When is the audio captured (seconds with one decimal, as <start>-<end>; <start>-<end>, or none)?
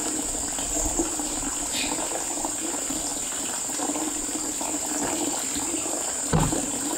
0.0-7.0